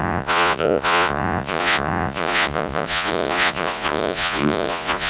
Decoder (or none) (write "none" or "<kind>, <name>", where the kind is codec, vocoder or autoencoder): vocoder, Vocos